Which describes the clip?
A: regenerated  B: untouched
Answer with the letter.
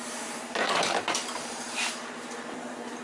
A